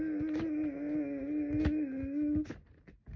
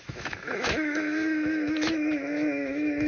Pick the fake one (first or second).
second